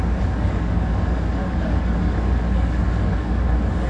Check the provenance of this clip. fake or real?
fake